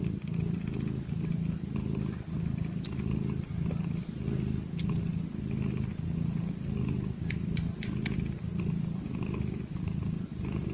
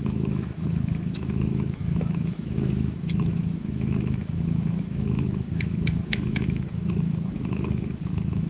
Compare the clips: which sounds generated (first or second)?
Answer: second